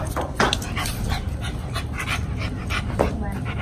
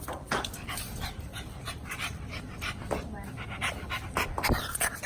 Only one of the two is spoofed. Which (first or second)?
second